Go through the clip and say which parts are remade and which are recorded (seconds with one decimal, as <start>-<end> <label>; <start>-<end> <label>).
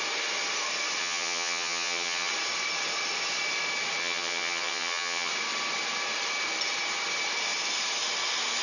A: 0.0-1.0 recorded; 1.0-2.3 remade; 2.3-4.0 recorded; 4.0-5.3 remade; 5.3-8.6 recorded